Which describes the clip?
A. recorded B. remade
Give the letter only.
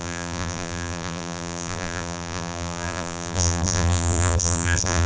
B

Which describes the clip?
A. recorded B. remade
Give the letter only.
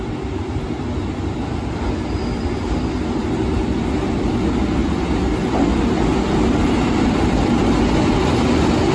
A